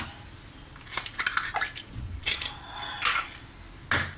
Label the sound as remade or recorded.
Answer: recorded